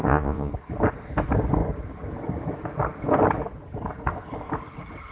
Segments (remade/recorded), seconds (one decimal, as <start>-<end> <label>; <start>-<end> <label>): 0.0-0.5 remade; 0.5-5.1 recorded